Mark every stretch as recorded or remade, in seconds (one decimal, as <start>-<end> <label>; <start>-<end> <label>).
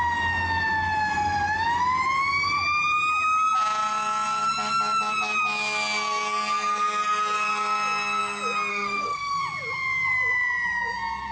0.0-8.7 recorded; 8.7-9.4 remade; 9.4-11.3 recorded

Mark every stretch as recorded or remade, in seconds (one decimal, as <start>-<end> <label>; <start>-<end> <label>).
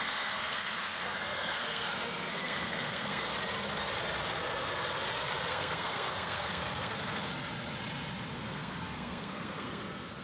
0.0-3.3 remade; 3.3-5.5 recorded; 5.5-7.3 remade; 7.3-8.3 recorded; 8.3-10.2 remade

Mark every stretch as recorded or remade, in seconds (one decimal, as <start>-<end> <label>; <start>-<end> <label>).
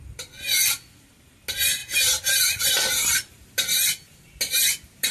0.0-5.1 recorded